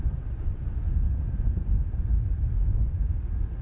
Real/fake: real